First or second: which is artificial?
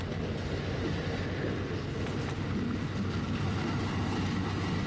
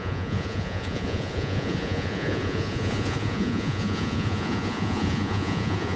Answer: second